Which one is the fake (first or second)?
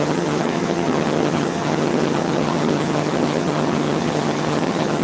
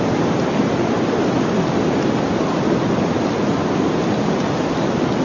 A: first